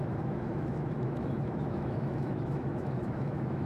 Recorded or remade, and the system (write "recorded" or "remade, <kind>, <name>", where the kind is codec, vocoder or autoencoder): remade, autoencoder, DAC-VAE